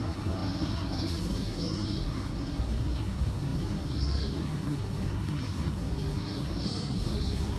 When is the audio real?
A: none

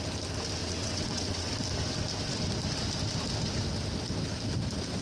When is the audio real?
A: 0.0-0.6; 1.5-5.0

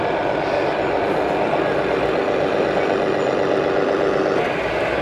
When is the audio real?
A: 0.0-5.0